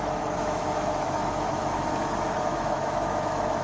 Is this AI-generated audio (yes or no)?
yes